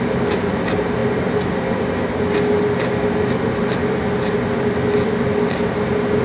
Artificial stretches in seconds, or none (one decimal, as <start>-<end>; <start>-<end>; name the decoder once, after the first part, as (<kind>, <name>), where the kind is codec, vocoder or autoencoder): none